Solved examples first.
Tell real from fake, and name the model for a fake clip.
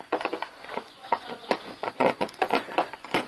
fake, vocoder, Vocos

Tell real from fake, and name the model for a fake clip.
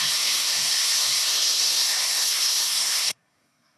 fake, codec, SNAC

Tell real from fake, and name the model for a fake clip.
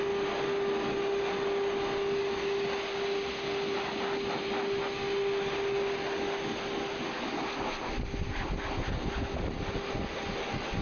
real